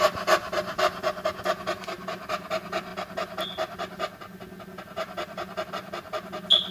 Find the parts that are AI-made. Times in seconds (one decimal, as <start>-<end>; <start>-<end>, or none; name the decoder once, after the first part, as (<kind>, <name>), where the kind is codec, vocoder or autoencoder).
none